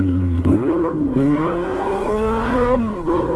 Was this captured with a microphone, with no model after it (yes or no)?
no